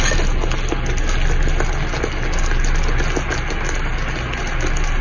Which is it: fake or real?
real